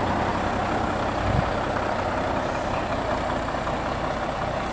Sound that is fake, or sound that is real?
real